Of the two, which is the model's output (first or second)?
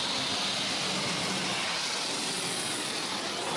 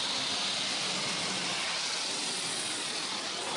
second